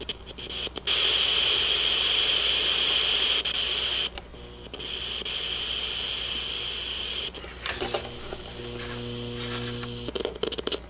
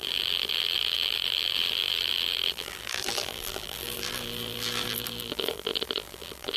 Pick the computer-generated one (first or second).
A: second